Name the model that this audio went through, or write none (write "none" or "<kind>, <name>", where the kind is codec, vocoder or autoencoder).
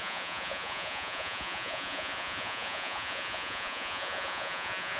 vocoder, Vocos